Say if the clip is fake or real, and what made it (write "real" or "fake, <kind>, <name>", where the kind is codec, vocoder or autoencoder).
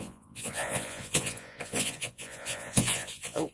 fake, vocoder, Vocos